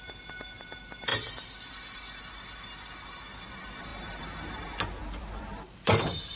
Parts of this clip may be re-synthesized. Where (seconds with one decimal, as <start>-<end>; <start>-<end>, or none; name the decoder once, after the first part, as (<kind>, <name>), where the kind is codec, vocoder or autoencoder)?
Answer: 1.1-2.2 (vocoder, BigVGAN v2); 3.9-4.4; 5.0-6.4